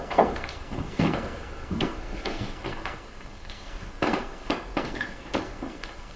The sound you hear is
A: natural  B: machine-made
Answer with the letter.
B